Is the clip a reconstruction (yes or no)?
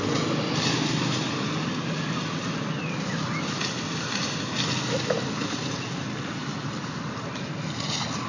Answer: no